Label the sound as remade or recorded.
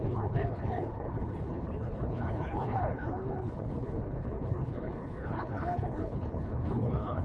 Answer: remade